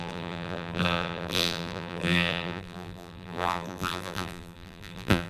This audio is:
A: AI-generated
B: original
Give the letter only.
A